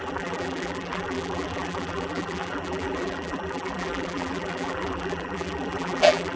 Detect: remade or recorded remade